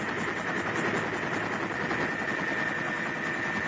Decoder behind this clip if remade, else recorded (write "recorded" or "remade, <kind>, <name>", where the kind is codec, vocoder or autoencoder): recorded